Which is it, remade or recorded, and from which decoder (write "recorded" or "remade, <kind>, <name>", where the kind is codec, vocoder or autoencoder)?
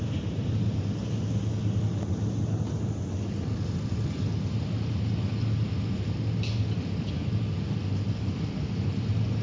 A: recorded